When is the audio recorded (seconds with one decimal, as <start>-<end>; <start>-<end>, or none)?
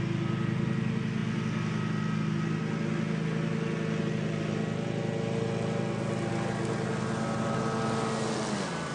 0.0-8.9